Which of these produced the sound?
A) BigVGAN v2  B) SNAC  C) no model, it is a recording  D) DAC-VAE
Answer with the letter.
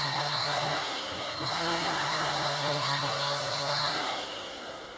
B